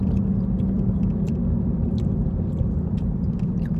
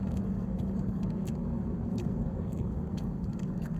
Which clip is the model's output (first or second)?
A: second